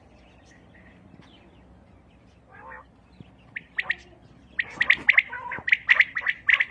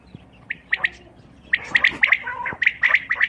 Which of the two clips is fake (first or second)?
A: second